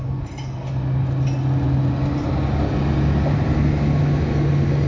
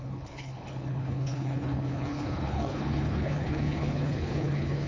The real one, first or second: first